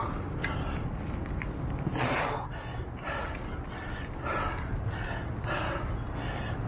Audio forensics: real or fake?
real